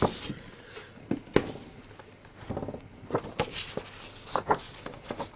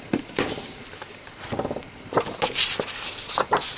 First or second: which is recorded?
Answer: first